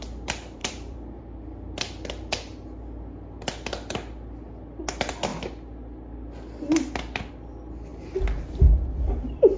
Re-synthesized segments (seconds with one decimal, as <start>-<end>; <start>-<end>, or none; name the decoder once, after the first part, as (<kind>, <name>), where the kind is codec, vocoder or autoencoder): 0.6-1.2 (vocoder, BigVGAN v2)